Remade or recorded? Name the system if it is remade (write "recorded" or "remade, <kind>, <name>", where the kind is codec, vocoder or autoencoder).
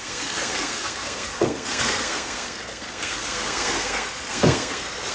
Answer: remade, codec, SNAC